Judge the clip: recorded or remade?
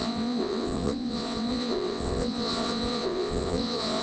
remade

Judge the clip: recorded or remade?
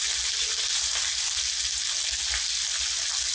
recorded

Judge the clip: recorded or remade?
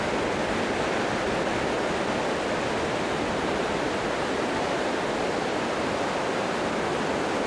recorded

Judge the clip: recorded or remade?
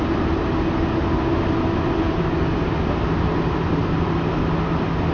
recorded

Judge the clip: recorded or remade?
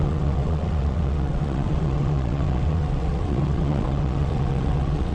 remade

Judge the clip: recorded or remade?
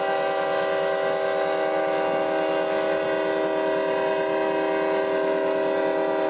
recorded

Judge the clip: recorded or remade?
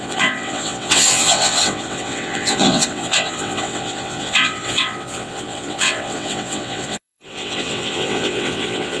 remade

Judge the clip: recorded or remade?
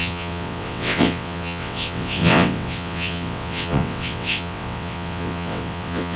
remade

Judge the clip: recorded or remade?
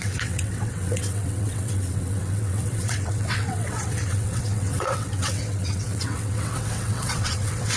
remade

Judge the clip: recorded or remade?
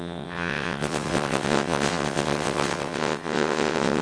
remade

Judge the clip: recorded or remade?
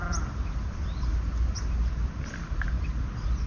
recorded